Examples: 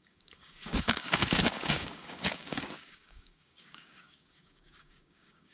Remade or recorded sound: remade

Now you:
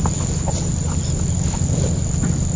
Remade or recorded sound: recorded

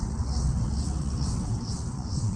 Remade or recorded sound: remade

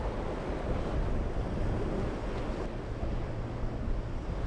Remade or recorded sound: recorded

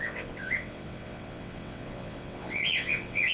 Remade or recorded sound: remade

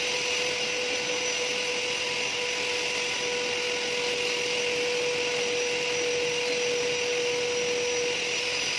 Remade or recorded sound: recorded